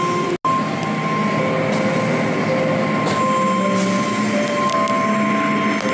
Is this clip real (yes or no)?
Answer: yes